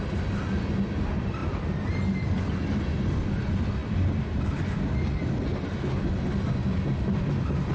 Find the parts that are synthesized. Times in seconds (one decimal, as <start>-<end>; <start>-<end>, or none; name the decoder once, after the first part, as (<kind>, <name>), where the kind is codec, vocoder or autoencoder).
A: none